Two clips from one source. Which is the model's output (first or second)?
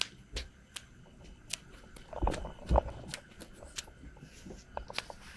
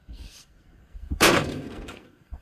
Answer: second